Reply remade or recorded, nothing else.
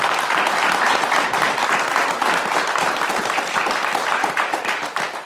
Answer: recorded